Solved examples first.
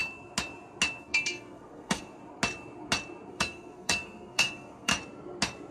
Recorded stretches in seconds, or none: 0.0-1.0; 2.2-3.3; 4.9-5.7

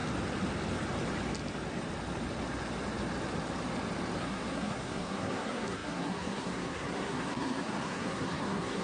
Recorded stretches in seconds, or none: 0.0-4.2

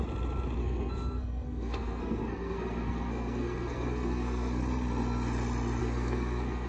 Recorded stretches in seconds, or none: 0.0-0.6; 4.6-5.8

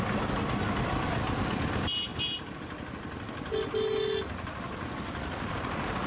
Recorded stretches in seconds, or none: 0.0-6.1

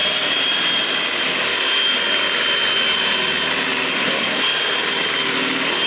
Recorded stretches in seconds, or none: 0.0-3.9; 4.4-5.9

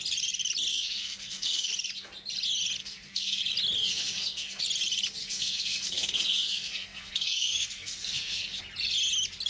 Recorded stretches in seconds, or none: 0.0-0.7; 1.7-2.8; 3.4-3.8; 4.6-5.2; 8.6-9.5